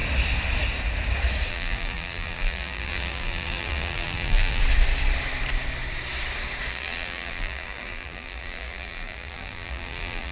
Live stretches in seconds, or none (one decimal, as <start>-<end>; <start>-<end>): 0.0-1.5; 4.6-6.7